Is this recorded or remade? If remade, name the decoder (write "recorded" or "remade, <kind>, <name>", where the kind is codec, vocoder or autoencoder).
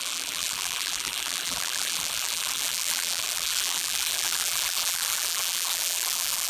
remade, vocoder, BigVGAN v2